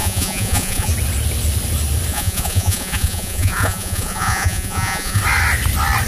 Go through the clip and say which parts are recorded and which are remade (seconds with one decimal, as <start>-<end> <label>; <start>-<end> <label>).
0.0-0.9 remade; 0.9-2.1 recorded; 2.1-5.2 remade; 5.2-6.1 recorded